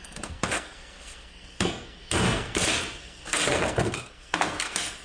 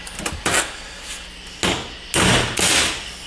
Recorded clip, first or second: second